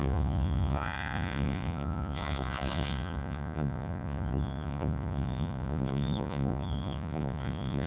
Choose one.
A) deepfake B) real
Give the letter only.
A